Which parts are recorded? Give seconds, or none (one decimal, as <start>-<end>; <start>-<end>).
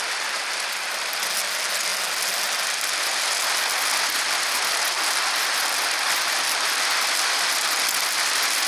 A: 0.0-8.7